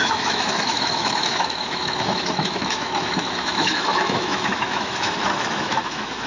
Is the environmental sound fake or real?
fake